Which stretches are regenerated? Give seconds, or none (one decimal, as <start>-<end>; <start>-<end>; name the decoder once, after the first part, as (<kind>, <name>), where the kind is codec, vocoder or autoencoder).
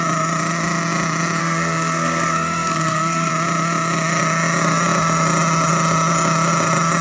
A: 1.4-3.3 (codec, SNAC)